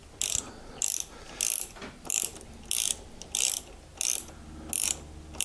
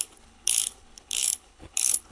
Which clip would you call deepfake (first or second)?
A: second